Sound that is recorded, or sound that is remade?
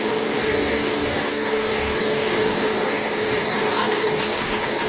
remade